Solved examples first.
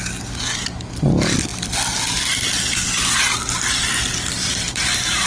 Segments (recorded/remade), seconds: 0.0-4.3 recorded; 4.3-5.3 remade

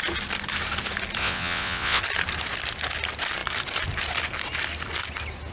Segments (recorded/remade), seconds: 0.0-1.2 recorded; 1.2-2.0 remade; 2.0-5.5 recorded

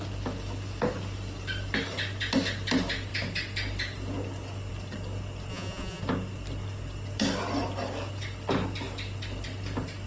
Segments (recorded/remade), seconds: 0.0-5.5 recorded; 5.5-6.0 remade; 6.0-10.1 recorded

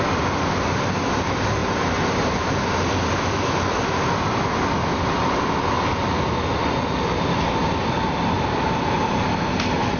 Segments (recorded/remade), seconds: 0.0-10.0 recorded